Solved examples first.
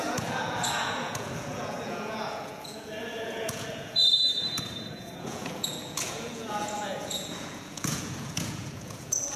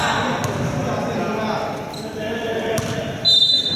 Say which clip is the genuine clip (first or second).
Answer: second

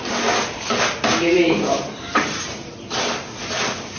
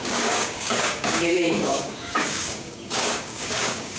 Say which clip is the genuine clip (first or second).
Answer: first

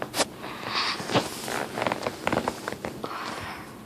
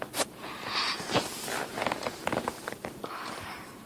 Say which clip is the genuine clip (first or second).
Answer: first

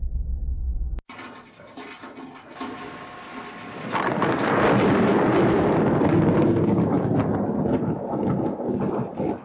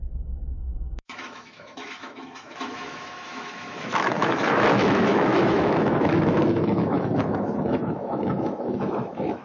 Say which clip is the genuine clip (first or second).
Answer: first